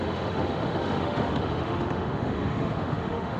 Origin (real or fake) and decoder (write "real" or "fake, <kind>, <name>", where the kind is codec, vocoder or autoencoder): fake, autoencoder, DAC-VAE